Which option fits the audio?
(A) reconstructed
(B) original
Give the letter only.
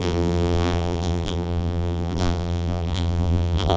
A